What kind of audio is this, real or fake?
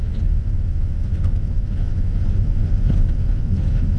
real